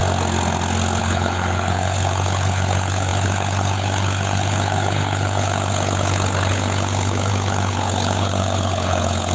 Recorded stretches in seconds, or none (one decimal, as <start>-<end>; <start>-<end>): 0.0-1.0

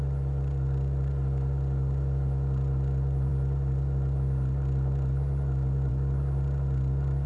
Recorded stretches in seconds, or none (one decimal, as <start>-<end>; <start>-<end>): 0.0-7.3

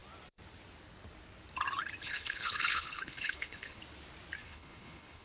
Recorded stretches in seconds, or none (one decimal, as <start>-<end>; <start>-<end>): 0.0-2.0; 3.8-4.4

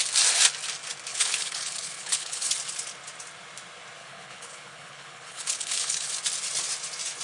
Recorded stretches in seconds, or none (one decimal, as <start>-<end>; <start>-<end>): 0.0-1.1; 2.5-4.0; 6.1-7.2

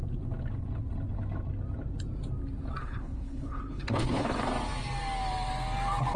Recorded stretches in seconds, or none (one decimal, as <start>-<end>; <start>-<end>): 0.0-2.8; 4.5-6.2

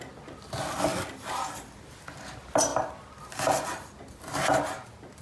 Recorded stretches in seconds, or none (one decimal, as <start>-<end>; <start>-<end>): 0.0-5.2

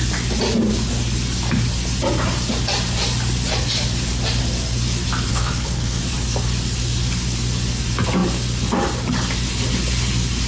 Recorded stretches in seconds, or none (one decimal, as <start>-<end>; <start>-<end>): 0.0-5.3; 6.0-10.5